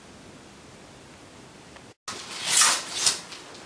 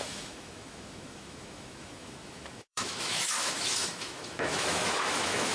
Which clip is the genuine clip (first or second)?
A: first